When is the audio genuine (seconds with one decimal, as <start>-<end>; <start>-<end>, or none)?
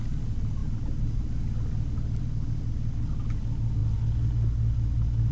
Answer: 0.0-5.3